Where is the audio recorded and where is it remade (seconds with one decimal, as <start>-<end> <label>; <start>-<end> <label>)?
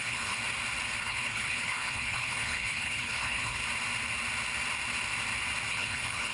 0.0-0.4 remade; 0.4-1.0 recorded; 1.0-3.6 remade; 3.6-5.7 recorded; 5.7-6.3 remade